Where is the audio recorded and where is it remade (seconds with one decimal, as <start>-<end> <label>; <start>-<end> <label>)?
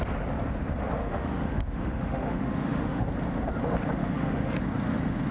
0.0-1.0 recorded; 1.0-3.0 remade; 3.0-4.0 recorded; 4.0-4.6 remade; 4.6-5.3 recorded